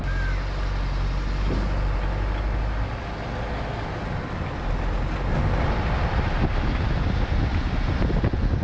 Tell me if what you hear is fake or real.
real